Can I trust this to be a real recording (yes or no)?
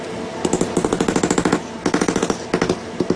yes